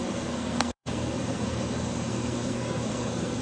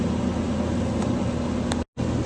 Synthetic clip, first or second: first